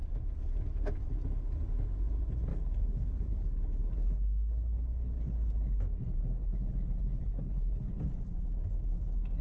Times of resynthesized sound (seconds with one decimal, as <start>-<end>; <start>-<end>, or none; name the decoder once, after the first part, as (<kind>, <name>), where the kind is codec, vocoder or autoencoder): 2.5-5.2 (codec, HILCodec); 6.4-8.0